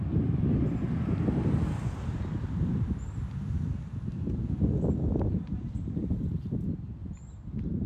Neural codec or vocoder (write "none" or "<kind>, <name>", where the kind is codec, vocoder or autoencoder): none